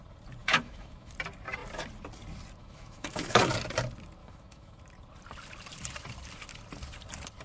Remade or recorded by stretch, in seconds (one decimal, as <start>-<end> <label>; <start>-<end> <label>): 0.0-0.4 recorded; 0.4-1.1 remade; 1.1-2.6 recorded; 2.6-3.5 remade; 3.5-4.2 recorded; 4.2-4.8 remade; 4.8-7.4 recorded